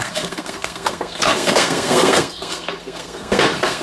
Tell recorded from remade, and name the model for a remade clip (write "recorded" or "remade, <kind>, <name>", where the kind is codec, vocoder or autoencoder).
remade, codec, SNAC